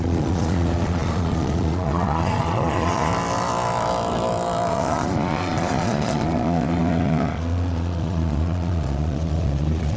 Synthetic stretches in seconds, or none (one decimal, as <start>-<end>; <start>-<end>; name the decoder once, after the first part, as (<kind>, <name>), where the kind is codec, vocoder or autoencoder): 0.0-3.1 (vocoder, Vocos); 4.7-10.0